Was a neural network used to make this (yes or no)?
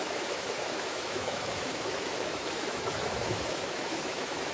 yes